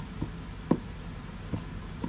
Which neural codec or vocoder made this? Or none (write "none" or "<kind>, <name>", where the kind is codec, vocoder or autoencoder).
none